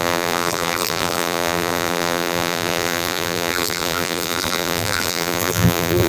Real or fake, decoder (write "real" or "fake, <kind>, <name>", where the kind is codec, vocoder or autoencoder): fake, vocoder, BigVGAN v2